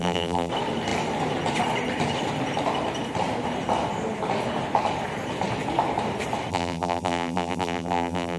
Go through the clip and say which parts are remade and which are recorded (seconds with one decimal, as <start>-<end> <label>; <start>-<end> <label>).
0.0-0.5 remade; 0.5-6.5 recorded; 6.5-8.4 remade